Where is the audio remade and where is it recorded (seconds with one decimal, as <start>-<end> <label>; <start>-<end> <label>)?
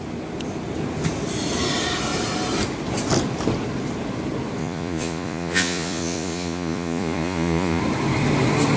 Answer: 0.0-4.6 recorded; 4.6-7.8 remade; 7.8-8.8 recorded